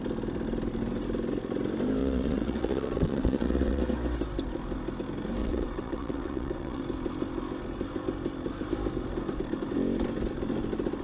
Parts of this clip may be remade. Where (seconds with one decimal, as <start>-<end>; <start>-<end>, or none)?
2.0-3.8; 5.4-6.8